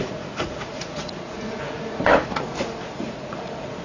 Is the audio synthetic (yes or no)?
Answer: yes